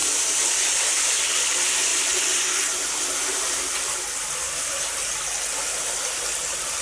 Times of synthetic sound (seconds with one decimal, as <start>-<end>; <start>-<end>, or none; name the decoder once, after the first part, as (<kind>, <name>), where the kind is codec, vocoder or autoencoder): none